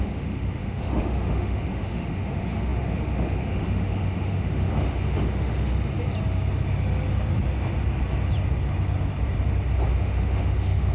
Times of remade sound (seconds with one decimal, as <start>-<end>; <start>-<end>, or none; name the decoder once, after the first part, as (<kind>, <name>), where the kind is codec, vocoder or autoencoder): 0.0-5.7 (autoencoder, DAC-VAE); 9.9-10.9